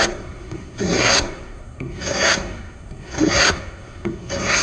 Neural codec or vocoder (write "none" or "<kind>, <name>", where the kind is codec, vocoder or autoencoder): codec, SNAC